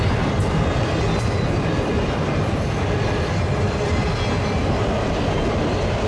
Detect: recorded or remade recorded